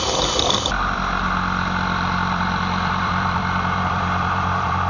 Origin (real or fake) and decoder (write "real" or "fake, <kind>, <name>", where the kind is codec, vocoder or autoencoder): fake, vocoder, BigVGAN v2